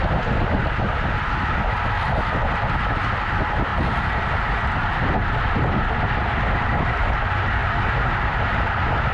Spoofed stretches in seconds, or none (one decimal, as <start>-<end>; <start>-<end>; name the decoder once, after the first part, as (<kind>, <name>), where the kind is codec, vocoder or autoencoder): none